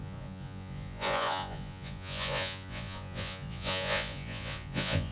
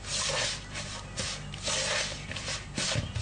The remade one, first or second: first